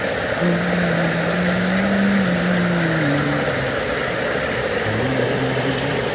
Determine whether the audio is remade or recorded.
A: recorded